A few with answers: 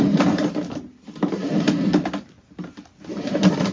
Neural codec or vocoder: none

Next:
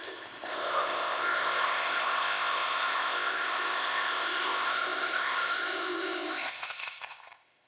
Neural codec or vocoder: codec, ZipCodec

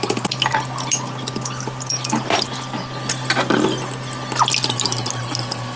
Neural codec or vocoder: none